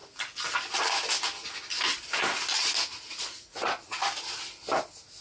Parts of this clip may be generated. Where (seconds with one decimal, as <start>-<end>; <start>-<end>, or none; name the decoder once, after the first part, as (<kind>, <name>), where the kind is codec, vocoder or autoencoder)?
2.9-4.0 (vocoder, Vocos)